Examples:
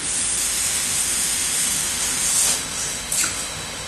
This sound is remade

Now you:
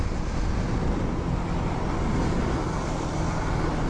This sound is recorded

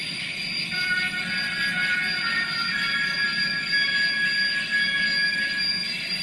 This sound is recorded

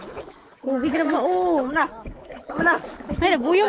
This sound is remade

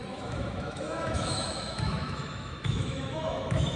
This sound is remade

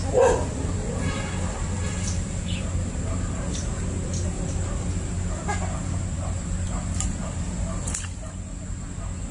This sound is recorded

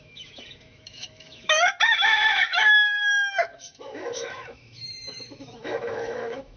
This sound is remade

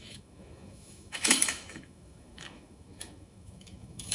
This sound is remade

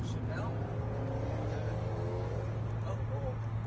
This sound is recorded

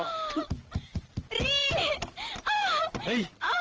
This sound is recorded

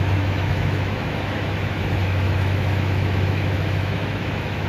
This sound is remade